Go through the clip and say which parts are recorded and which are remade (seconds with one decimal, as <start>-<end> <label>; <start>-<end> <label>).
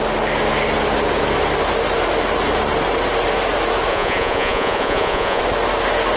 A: 0.0-3.9 recorded; 3.9-5.4 remade; 5.4-6.2 recorded